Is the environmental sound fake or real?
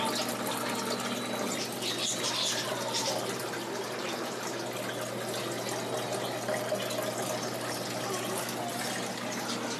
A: real